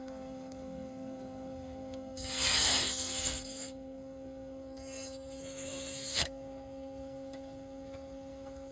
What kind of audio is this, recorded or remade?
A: remade